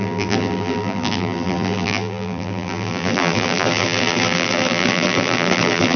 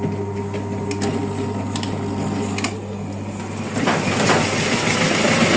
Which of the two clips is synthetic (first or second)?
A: first